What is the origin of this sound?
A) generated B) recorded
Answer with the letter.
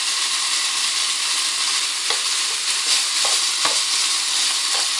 B